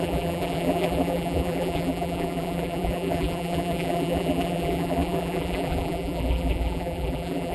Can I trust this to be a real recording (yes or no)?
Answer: no